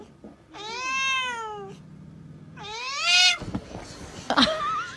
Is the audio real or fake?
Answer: real